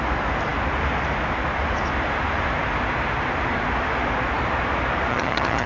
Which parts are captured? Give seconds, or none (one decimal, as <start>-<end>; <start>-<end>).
0.0-5.1